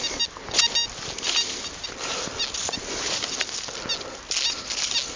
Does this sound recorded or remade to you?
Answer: recorded